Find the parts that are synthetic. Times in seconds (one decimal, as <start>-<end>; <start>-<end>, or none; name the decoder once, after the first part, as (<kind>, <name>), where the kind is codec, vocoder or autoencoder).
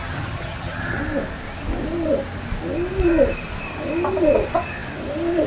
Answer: 0.0-1.0 (vocoder, HiFi-GAN)